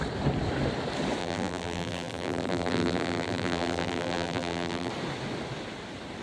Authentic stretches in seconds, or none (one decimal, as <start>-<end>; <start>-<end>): 0.0-1.2; 4.9-6.2